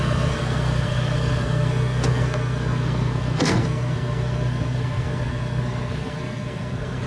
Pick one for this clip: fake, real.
fake